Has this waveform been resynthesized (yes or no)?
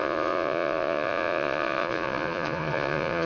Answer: yes